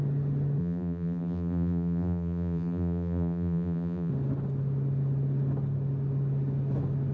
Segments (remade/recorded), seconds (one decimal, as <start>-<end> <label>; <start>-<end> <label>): 0.0-0.6 recorded; 0.6-4.1 remade; 4.1-7.1 recorded